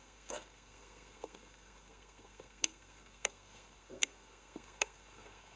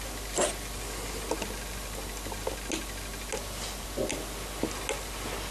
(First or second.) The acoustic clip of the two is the second